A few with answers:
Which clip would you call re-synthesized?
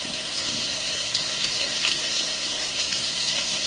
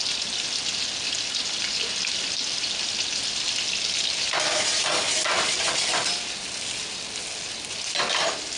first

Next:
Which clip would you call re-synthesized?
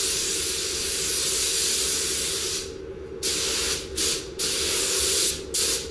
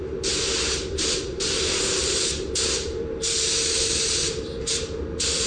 second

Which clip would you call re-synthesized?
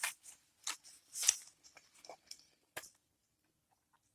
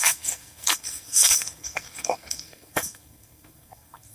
second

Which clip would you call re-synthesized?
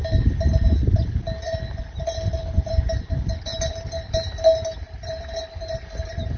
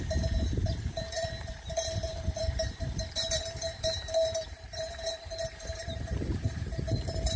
second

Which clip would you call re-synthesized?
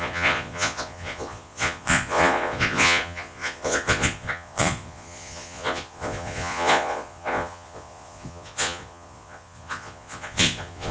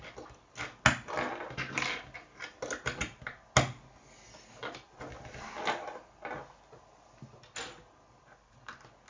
first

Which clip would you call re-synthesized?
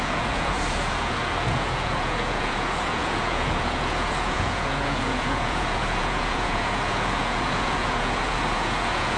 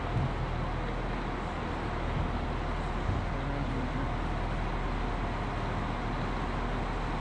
first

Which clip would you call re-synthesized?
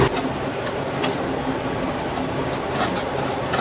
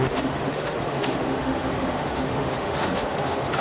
second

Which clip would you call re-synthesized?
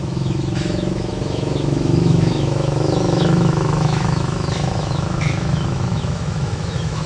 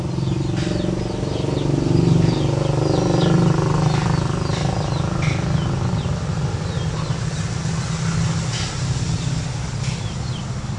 first